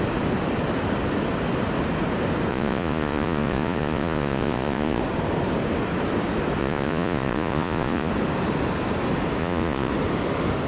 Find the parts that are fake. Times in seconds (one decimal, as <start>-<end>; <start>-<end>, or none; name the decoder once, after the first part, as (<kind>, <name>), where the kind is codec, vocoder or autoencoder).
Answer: 2.5-5.0 (vocoder, Vocos); 6.6-8.1; 9.4-9.9